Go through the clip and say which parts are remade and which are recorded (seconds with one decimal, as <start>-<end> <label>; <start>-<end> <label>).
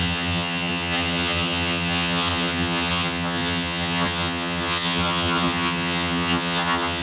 0.0-7.0 remade